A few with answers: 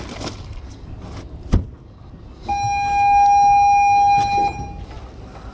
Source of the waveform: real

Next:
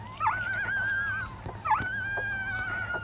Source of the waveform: real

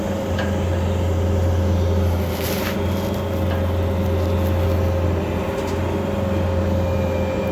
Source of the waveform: real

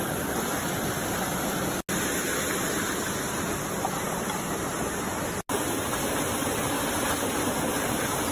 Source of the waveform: real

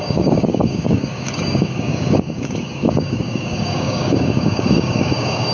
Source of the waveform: fake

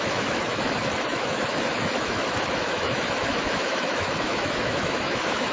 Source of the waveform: fake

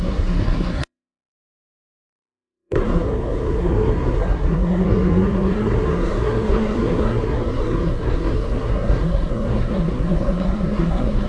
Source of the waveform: fake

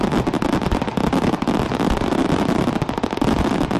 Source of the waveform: real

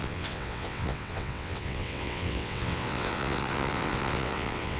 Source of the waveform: fake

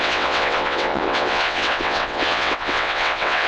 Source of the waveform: fake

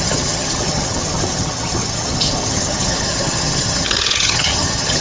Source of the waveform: fake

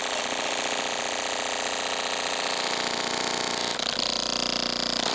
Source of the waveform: real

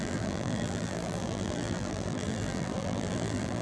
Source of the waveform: fake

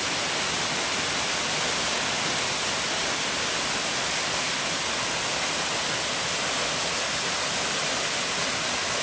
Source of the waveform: real